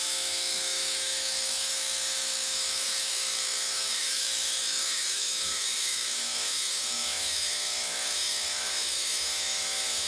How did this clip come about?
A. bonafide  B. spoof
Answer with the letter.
B